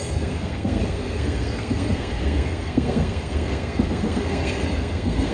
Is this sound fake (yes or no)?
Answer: yes